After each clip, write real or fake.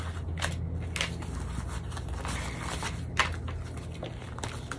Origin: real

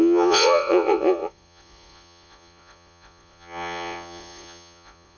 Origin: fake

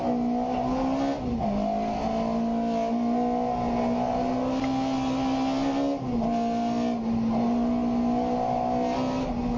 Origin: real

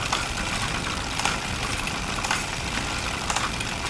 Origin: fake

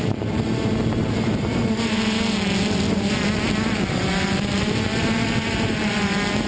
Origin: fake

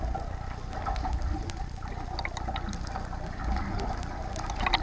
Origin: real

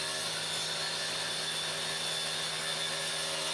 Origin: real